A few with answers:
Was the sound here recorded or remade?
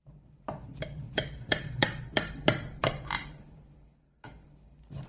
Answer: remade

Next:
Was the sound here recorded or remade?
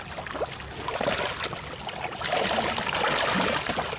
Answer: recorded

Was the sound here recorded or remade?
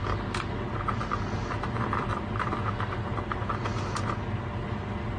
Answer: recorded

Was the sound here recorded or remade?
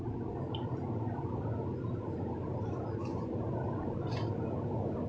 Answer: recorded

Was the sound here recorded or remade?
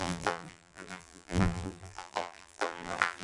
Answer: remade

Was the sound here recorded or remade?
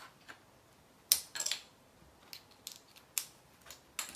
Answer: recorded